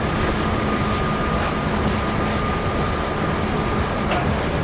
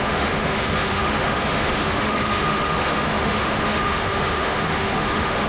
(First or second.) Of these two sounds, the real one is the first